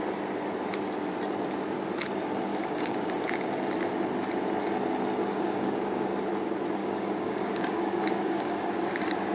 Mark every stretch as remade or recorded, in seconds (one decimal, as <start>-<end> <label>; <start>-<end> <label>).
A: 0.0-2.5 recorded; 2.5-3.1 remade; 3.1-5.2 recorded; 5.2-6.1 remade; 6.1-6.8 recorded; 6.8-8.7 remade; 8.7-9.3 recorded